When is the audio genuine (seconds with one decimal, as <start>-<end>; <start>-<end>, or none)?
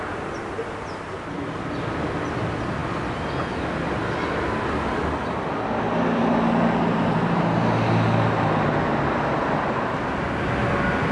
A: 0.0-11.1